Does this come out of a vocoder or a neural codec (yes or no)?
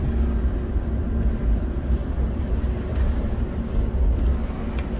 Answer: no